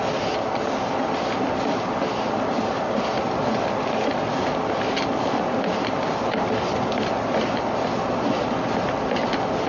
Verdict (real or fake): real